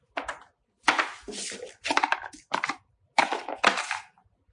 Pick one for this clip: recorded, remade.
recorded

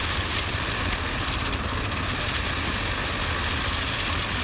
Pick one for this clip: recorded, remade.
recorded